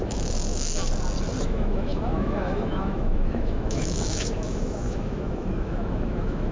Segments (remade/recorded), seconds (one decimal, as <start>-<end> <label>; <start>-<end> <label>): 0.0-0.8 remade; 0.8-1.4 recorded; 1.4-6.5 remade